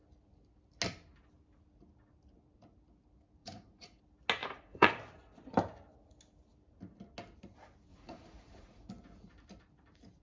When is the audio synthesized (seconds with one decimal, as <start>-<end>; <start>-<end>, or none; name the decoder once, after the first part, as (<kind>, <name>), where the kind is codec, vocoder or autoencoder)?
3.4-4.0 (vocoder, Vocos); 4.4-4.9; 7.9-8.9